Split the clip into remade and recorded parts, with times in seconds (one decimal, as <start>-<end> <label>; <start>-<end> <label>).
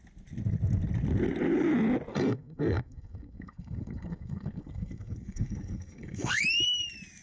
0.0-2.1 recorded; 2.1-6.4 remade; 6.4-7.2 recorded